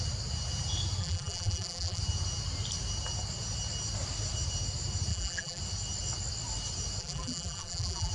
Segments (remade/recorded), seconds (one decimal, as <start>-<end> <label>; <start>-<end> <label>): 0.0-1.0 recorded; 1.0-2.0 remade; 2.0-5.1 recorded; 5.1-5.6 remade; 5.6-7.0 recorded; 7.0-8.1 remade